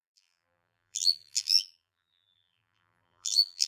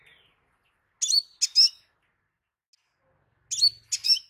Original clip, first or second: second